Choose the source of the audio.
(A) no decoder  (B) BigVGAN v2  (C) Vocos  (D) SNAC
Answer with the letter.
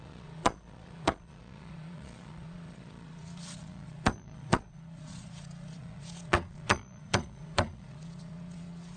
C